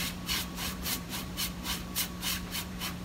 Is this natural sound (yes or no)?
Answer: no